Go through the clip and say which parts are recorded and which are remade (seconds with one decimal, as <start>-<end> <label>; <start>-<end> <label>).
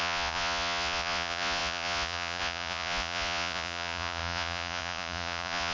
0.0-5.7 remade